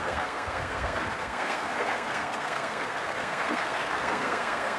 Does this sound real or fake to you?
fake